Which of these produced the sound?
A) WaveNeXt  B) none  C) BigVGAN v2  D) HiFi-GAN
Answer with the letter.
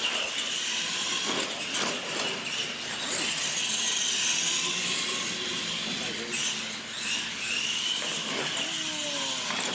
B